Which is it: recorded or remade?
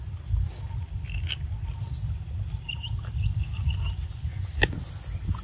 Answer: recorded